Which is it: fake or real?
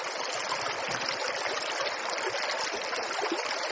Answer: real